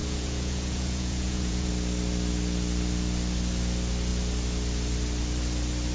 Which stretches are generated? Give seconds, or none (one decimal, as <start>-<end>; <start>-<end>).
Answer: 0.0-1.7